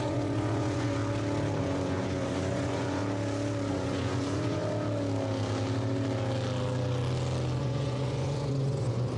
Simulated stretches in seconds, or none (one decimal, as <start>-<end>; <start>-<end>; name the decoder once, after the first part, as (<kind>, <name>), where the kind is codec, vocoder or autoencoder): 0.0-1.0 (vocoder, Vocos); 1.6-3.0; 3.7-4.6; 7.6-9.2